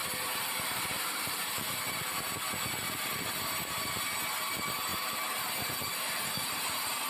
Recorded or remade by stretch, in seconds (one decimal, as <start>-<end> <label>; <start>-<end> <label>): 0.0-2.4 remade; 2.4-4.9 recorded; 4.9-6.0 remade; 6.0-7.1 recorded